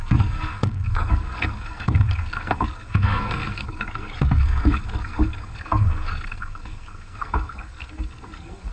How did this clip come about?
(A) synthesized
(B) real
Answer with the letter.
A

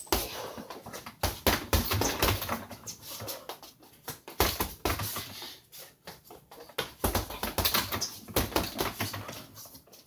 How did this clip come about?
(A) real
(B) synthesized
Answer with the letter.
A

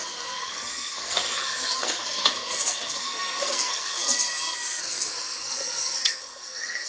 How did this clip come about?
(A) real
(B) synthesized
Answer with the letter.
B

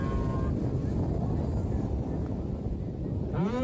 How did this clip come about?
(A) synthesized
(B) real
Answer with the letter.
B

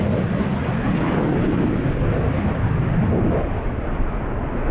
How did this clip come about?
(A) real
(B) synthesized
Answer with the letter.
A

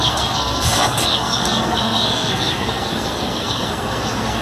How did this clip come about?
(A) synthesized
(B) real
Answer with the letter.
A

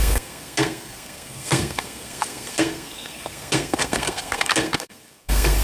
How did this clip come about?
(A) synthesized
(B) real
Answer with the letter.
A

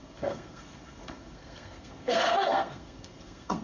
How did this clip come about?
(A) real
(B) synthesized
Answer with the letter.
B